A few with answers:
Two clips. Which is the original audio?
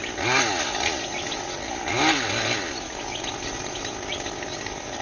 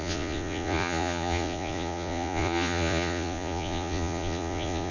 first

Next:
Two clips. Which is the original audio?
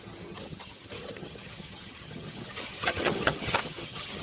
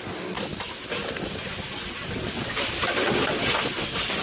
second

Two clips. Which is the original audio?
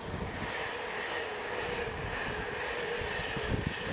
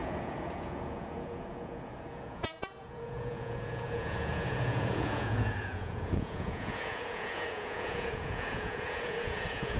first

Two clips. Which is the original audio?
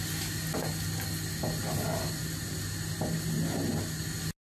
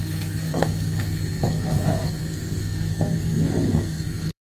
first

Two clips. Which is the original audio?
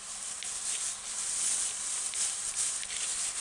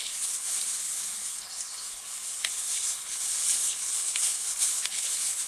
first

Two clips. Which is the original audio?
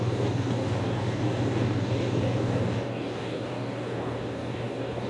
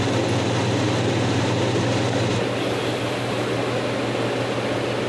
second